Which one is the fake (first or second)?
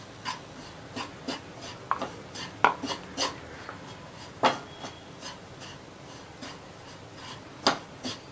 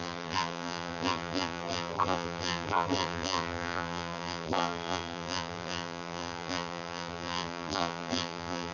second